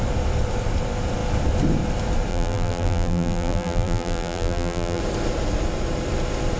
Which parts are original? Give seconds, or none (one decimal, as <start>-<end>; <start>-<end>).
0.0-2.3; 5.0-6.6